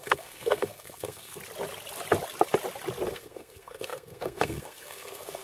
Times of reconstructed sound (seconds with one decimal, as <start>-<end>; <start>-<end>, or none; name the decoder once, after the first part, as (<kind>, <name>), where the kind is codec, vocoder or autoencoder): 0.0-1.4 (codec, SNAC); 3.1-5.4